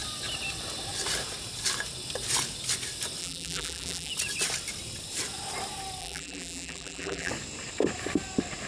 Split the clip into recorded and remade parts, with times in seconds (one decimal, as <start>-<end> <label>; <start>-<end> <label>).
0.0-3.2 recorded; 3.2-4.1 remade; 4.1-6.0 recorded; 6.0-7.3 remade; 7.3-8.7 recorded